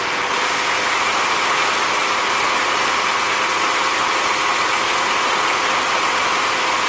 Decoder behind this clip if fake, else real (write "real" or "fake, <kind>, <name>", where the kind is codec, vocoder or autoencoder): real